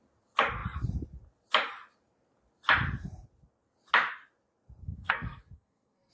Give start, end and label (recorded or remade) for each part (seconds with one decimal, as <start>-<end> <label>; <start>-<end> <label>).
0.0-4.8 recorded; 4.8-6.1 remade

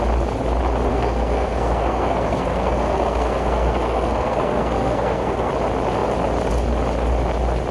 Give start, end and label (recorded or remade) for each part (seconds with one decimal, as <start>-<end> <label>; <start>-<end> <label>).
0.0-0.9 recorded; 0.9-5.5 remade; 5.5-7.7 recorded

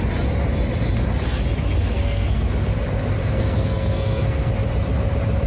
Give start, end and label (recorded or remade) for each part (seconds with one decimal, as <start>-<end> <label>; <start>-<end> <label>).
0.0-1.8 recorded; 1.8-2.5 remade; 2.5-3.2 recorded; 3.2-4.5 remade; 4.5-5.5 recorded

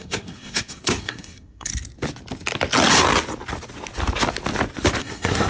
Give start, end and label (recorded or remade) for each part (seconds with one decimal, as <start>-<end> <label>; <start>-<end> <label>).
0.0-1.7 remade; 1.7-5.0 recorded; 5.0-5.5 remade

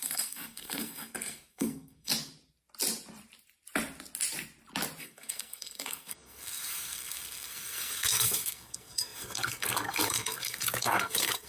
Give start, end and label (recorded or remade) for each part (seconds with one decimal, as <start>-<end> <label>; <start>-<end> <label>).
0.0-2.1 remade; 2.1-5.0 recorded; 5.0-11.5 remade